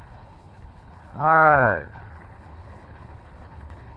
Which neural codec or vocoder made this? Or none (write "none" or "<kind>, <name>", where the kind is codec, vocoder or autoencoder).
codec, HILCodec